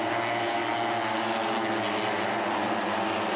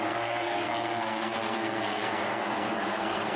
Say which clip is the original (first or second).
first